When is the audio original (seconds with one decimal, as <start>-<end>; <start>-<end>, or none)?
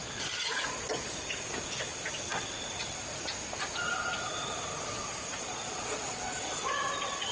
1.1-5.3; 6.5-7.3